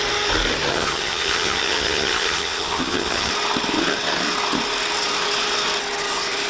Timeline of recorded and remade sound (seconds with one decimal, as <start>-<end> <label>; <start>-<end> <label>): 0.0-0.7 recorded; 0.7-3.3 remade; 3.3-6.5 recorded